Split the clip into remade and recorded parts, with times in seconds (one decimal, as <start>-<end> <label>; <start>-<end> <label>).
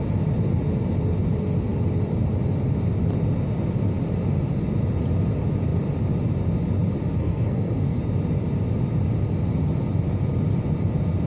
0.0-7.2 recorded; 7.2-8.0 remade; 8.0-11.3 recorded